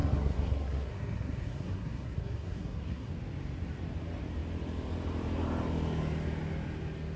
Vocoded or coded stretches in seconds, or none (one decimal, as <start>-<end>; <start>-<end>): 0.0-3.1